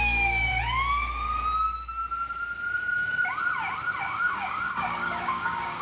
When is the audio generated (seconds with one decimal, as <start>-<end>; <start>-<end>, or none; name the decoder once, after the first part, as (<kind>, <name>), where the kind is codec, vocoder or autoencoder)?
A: 0.0-0.5 (codec, DAC); 4.0-5.8